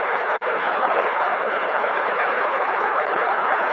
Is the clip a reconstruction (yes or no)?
yes